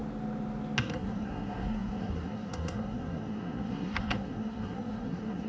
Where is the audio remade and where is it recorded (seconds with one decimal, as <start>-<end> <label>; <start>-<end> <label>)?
0.0-0.8 recorded; 0.8-5.5 remade